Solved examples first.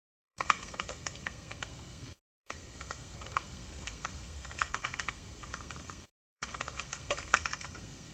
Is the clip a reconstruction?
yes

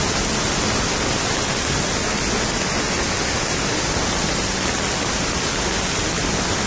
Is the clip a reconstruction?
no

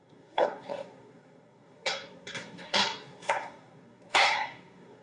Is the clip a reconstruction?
yes